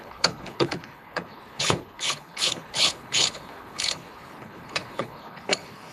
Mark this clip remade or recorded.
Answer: remade